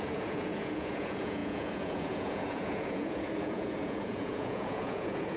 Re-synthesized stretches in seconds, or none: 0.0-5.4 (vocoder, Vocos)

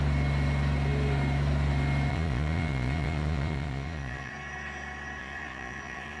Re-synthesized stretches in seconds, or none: 2.1-4.3 (vocoder, Vocos); 5.2-6.2

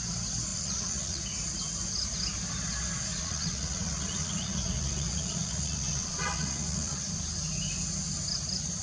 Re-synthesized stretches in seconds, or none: 0.5-1.2 (vocoder, Vocos); 3.1-7.0

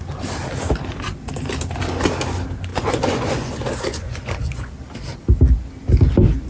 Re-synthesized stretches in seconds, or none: 2.7-3.5 (vocoder, Vocos); 3.9-4.7

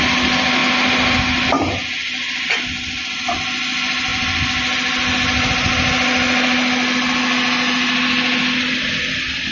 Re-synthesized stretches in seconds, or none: none

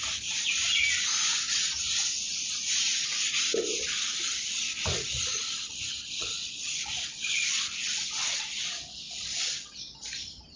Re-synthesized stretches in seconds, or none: 6.0-6.8 (vocoder, Vocos)

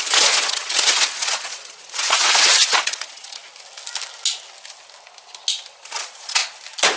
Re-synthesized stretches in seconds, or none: 0.0-3.4 (vocoder, Vocos); 5.7-6.4

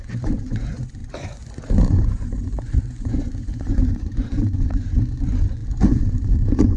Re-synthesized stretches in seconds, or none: 0.0-6.8 (vocoder, Vocos)